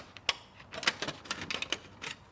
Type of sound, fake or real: real